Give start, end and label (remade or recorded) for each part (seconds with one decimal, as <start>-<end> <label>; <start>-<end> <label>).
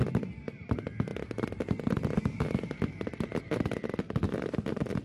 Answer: 0.0-0.7 remade; 0.7-1.1 recorded; 1.1-2.2 remade; 2.2-5.0 recorded